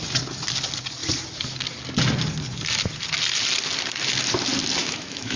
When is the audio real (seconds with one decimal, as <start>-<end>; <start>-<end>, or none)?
0.0-4.8